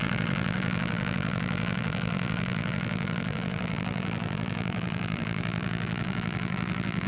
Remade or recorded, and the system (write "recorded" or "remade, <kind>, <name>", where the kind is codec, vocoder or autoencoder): remade, vocoder, BigVGAN v2